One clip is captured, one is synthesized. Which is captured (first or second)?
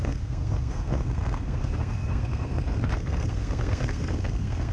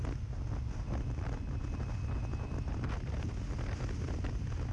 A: second